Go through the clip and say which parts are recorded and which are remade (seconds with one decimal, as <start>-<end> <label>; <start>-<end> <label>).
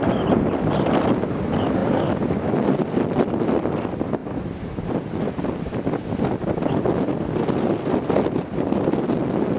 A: 0.0-9.6 recorded